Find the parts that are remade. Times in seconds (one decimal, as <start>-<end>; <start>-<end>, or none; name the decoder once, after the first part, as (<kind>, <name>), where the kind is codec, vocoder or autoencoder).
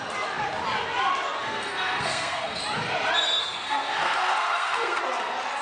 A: 1.4-2.6 (codec, SNAC); 3.4-5.0